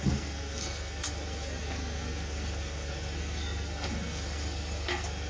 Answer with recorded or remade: remade